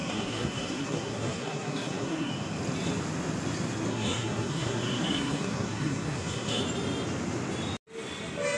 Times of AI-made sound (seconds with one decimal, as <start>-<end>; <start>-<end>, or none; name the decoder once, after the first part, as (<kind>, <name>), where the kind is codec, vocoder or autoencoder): 0.0-2.3 (codec, SNAC); 3.9-6.6